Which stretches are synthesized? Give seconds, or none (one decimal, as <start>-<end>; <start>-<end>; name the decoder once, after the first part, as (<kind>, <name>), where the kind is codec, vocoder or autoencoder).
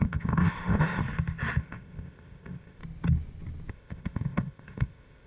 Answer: 0.0-1.0 (codec, ZipCodec); 1.6-2.8; 3.7-5.3